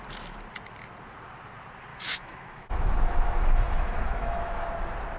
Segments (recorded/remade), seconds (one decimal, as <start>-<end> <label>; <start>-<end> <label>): 0.0-1.9 recorded; 1.9-4.7 remade; 4.7-5.2 recorded